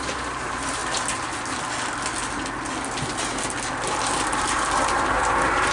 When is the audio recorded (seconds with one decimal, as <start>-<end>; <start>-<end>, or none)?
0.8-4.2